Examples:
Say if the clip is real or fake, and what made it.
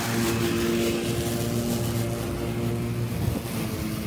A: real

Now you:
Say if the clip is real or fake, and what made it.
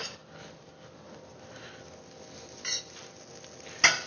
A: real